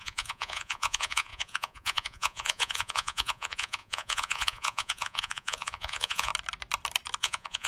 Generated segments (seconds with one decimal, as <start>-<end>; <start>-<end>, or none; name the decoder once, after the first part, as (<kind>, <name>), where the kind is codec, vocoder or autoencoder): 0.0-6.3 (vocoder, Vocos); 7.2-7.7